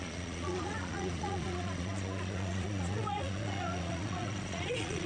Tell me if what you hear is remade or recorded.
remade